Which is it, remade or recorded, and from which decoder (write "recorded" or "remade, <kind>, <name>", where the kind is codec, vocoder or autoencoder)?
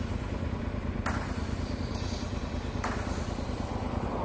recorded